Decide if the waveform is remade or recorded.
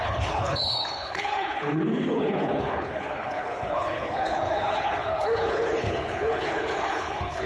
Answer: remade